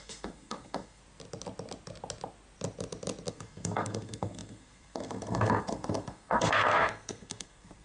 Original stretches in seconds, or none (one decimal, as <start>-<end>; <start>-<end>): 1.0-3.3